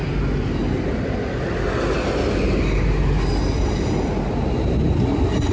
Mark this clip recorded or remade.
recorded